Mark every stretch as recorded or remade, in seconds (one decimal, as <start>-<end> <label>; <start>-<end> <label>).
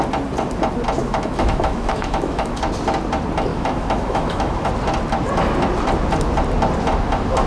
0.0-1.0 recorded; 1.0-2.6 remade; 2.6-3.5 recorded; 3.5-4.7 remade; 4.7-7.5 recorded